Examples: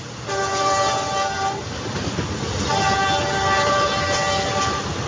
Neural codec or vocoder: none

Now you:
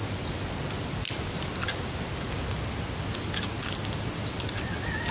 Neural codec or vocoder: none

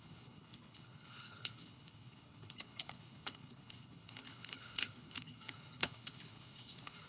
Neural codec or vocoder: codec, HILCodec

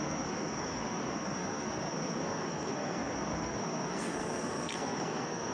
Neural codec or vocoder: codec, SNAC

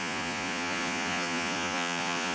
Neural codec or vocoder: vocoder, Vocos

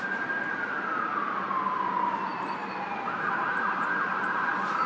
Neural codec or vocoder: none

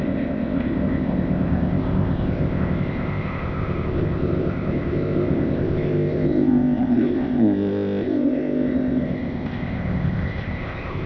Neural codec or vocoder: codec, ZipCodec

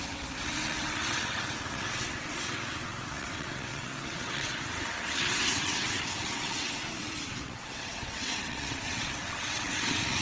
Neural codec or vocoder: vocoder, WaveNeXt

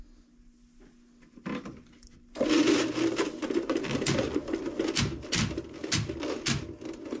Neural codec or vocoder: none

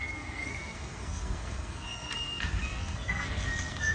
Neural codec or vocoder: codec, SNAC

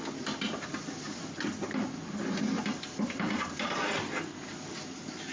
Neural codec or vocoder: none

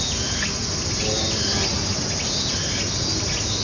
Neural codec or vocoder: none